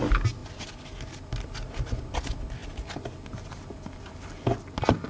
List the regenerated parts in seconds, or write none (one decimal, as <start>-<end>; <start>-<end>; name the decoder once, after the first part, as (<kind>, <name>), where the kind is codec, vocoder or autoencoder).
none